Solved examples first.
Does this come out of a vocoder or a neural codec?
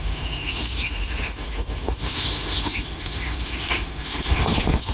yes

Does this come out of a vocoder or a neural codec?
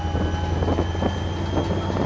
no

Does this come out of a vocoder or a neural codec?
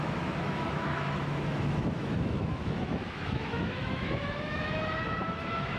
yes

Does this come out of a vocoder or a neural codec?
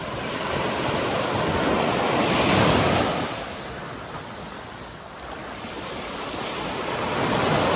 no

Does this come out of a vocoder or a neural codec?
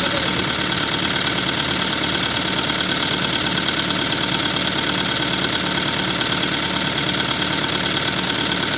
no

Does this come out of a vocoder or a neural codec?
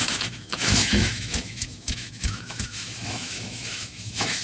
yes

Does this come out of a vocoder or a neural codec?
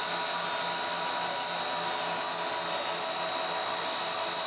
no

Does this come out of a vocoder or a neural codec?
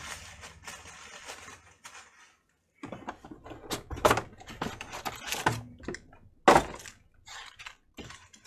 no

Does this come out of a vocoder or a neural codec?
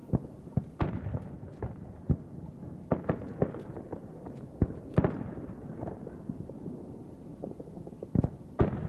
no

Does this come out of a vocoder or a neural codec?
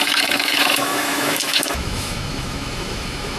yes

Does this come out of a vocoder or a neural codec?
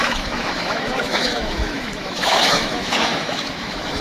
yes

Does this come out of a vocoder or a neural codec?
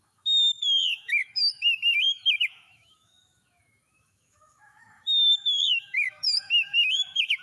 yes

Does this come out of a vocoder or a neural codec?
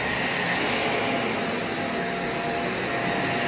no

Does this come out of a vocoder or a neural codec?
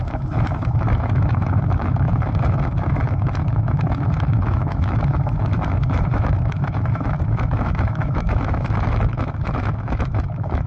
yes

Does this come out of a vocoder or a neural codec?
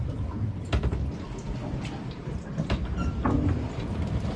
no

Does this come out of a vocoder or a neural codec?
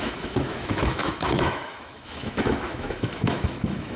yes